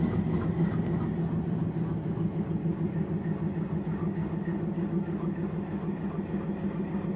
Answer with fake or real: real